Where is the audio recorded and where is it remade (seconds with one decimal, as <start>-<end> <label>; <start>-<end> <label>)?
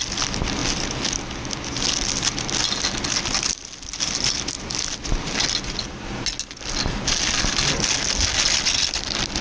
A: 0.0-9.4 recorded